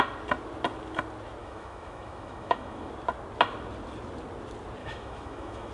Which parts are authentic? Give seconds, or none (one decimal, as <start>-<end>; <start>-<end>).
0.0-1.4; 2.9-4.8